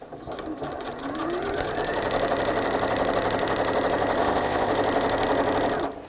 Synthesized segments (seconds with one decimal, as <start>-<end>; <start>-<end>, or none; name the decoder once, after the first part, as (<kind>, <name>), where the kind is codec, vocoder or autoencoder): 4.2-4.7 (codec, ZipCodec)